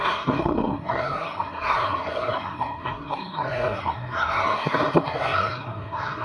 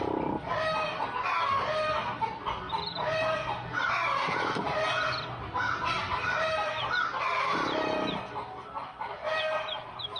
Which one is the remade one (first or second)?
first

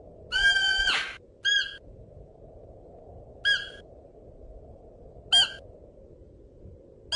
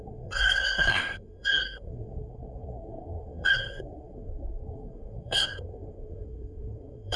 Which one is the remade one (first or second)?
second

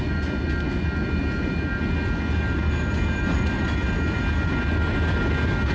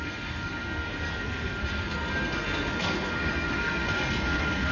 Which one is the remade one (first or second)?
second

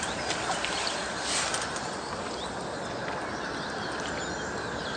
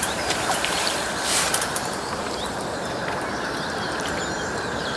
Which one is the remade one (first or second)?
second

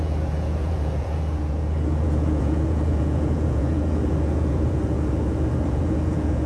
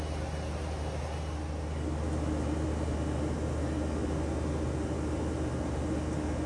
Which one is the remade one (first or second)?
first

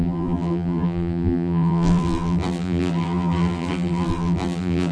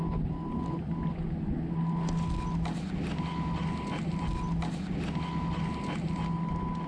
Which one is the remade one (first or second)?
first